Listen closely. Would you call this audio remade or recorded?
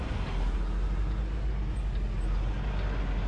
recorded